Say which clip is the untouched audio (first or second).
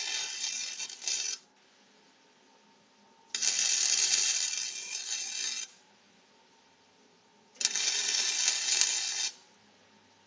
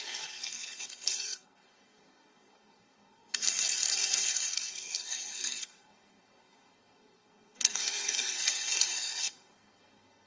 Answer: first